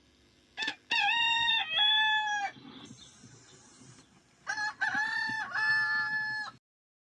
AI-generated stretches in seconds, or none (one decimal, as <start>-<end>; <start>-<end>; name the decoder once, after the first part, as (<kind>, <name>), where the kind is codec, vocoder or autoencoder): none